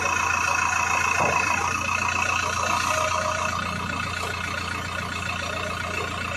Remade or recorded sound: recorded